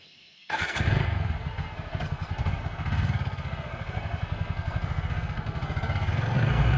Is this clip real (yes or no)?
no